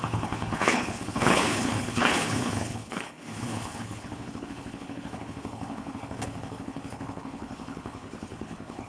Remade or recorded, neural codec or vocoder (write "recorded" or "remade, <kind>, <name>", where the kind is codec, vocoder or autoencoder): remade, codec, HILCodec